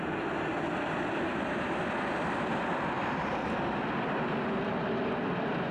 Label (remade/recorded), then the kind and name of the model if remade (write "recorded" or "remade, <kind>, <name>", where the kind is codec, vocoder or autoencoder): recorded